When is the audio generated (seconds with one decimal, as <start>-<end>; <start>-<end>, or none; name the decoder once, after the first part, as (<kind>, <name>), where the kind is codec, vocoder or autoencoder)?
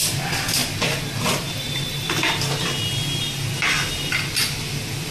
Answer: none